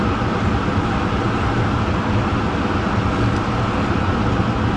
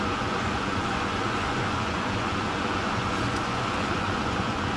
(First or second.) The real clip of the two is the first